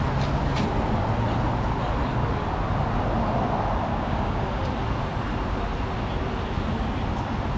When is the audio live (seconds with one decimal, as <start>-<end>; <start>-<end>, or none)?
0.0-3.9; 4.5-7.6